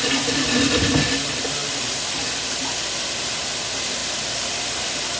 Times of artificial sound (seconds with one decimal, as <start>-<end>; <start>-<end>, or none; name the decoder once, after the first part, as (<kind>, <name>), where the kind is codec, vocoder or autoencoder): none